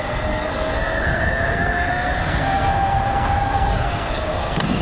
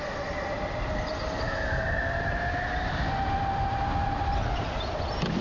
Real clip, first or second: second